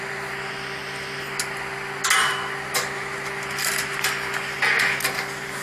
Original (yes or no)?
yes